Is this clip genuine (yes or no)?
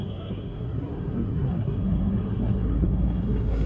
no